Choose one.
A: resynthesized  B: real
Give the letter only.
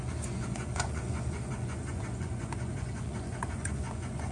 A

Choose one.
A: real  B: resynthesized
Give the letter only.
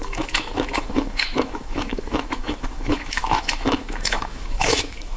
B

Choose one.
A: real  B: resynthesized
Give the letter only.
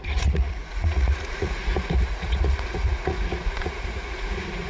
B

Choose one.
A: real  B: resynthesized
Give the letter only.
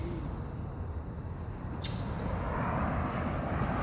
A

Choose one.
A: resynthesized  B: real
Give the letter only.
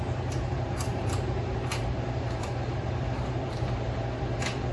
A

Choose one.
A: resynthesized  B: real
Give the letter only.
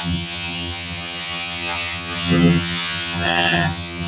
A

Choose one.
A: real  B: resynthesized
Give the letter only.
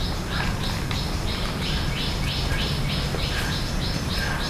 A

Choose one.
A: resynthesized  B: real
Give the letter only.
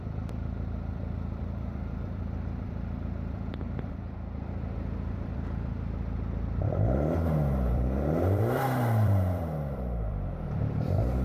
A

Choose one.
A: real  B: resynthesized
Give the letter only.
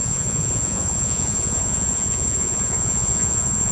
B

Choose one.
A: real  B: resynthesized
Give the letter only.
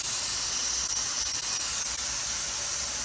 A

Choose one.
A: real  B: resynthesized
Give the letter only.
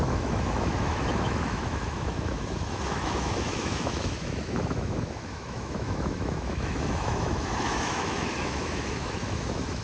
B